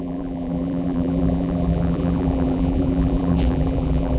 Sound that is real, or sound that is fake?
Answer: fake